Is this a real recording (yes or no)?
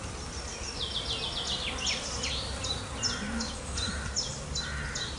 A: yes